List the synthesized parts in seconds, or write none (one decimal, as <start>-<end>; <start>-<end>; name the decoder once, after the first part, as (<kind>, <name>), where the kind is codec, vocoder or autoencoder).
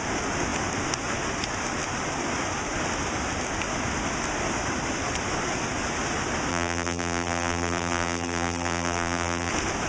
6.5-9.5 (vocoder, BigVGAN v2)